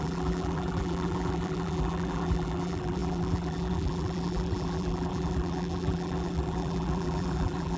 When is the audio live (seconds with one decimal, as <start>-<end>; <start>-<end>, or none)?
none